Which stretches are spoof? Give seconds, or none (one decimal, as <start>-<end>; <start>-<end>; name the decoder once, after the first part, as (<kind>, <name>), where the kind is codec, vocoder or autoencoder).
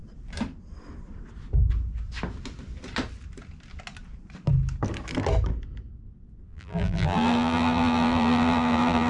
6.5-9.1 (vocoder, BigVGAN v2)